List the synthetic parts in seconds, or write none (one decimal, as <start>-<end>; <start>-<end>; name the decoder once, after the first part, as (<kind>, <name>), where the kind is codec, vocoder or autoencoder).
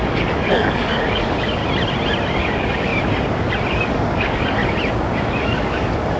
0.0-1.6 (codec, DAC); 2.4-2.9; 3.7-4.6; 5.3-6.2